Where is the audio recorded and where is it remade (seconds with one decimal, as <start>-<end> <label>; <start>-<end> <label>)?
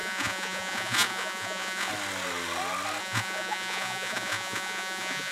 0.0-1.9 remade; 1.9-3.0 recorded; 3.0-5.3 remade